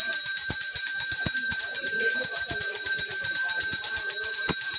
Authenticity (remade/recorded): recorded